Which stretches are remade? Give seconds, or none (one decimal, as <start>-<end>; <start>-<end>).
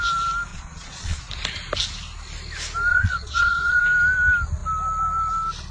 0.5-1.2; 2.9-3.8